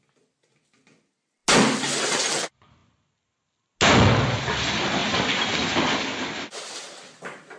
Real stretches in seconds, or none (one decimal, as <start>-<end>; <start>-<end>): 0.0-7.6

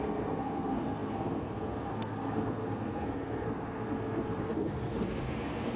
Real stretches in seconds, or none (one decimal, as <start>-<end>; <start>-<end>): none

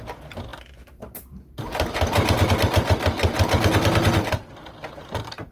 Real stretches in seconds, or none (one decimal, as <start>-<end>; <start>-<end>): 0.0-5.5

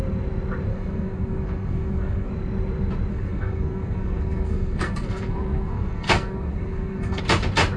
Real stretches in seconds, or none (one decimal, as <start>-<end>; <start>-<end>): 0.0-0.7; 2.3-3.1; 7.2-7.8

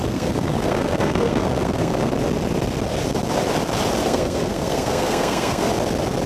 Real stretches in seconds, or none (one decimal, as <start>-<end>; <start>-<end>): 2.1-4.0; 5.7-6.3

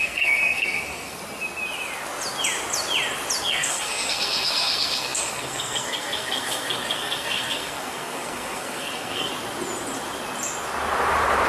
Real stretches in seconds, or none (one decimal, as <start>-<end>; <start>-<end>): 1.2-3.4; 9.3-11.5